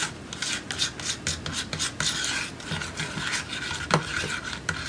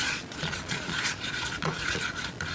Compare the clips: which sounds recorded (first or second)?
first